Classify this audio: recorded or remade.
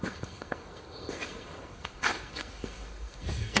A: remade